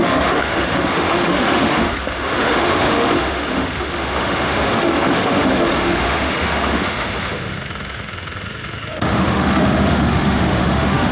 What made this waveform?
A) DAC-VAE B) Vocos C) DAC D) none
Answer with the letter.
A